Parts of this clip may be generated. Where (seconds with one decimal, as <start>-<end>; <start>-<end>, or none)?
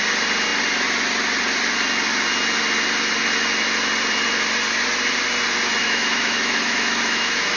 5.8-7.6